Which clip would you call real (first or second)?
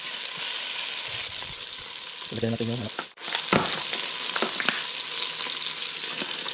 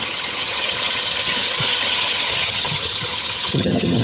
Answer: first